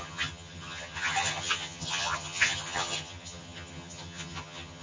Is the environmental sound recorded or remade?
remade